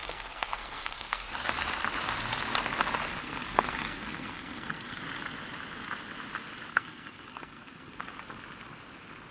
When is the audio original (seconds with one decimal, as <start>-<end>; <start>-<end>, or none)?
1.5-3.2; 5.0-6.7; 8.0-9.3